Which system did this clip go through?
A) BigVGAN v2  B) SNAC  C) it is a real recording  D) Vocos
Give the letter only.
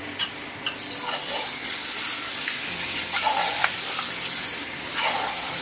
C